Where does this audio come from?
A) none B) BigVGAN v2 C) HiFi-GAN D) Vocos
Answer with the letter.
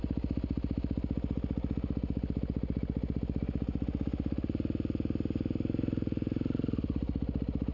A